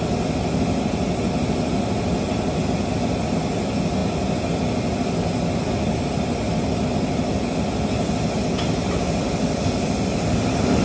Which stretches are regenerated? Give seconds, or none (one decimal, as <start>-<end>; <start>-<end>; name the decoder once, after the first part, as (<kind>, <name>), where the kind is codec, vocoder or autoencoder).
none